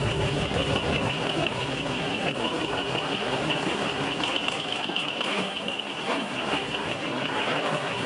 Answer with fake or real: fake